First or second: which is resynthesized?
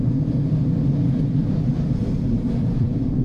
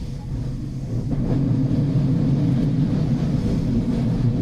first